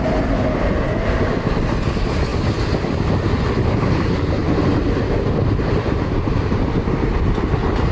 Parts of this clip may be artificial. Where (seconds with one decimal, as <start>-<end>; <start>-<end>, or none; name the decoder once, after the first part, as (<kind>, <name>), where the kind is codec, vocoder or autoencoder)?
none